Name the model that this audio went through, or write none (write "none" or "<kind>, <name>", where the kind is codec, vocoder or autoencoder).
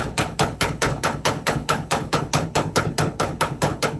codec, HILCodec